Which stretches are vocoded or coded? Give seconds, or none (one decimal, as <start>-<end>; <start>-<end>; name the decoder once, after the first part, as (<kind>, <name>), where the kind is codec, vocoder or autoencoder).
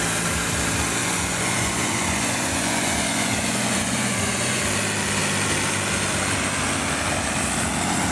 1.0-4.6 (vocoder, Vocos)